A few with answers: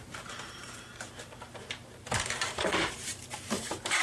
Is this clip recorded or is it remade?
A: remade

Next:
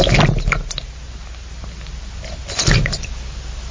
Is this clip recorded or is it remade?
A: recorded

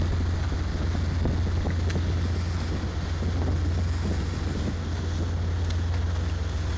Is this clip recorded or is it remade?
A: recorded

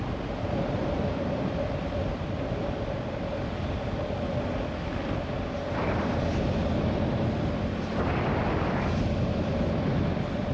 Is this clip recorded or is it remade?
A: recorded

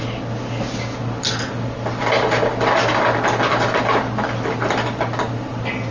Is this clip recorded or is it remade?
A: recorded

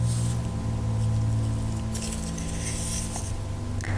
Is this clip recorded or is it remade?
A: recorded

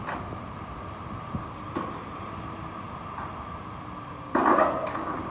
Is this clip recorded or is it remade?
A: recorded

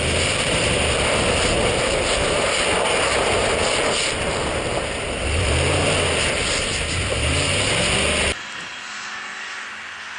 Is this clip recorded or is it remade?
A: recorded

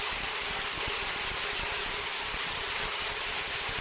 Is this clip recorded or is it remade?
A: remade